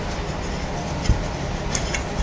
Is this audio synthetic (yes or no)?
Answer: no